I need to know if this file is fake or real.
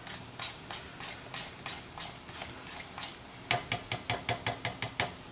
real